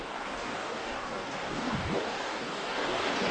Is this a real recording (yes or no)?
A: no